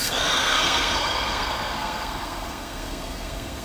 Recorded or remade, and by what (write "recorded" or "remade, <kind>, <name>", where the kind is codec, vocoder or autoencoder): remade, codec, SNAC